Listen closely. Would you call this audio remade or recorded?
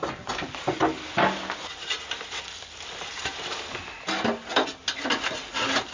recorded